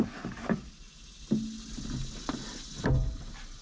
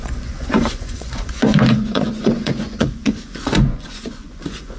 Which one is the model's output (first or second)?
second